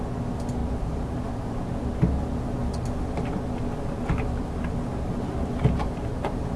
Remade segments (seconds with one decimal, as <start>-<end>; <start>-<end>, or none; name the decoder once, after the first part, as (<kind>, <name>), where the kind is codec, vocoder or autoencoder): 0.6-1.2 (vocoder, BigVGAN v2); 5.8-6.6